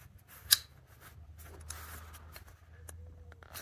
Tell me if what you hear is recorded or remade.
recorded